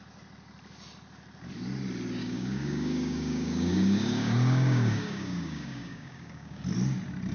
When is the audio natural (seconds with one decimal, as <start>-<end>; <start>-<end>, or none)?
0.0-2.2; 6.6-7.3